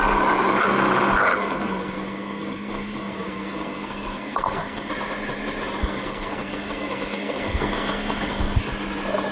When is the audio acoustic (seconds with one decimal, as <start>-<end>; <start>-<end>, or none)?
0.0-1.3; 4.9-5.8; 8.6-9.3